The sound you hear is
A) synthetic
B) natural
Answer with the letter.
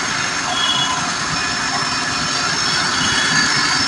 B